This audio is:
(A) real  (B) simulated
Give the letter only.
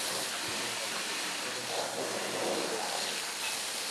A